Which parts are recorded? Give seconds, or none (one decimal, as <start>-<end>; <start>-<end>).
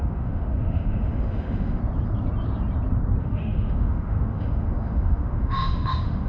1.8-3.2